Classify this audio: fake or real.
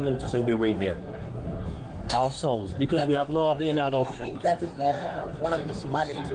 fake